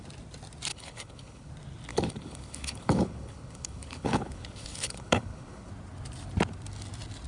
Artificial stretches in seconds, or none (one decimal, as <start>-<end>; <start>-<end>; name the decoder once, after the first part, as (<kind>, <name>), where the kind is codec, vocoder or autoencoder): 0.7-1.5 (codec, HILCodec); 1.9-5.7